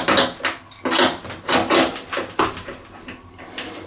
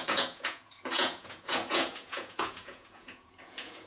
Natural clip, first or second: first